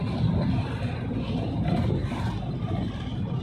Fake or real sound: real